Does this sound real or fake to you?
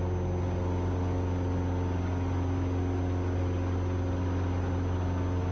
real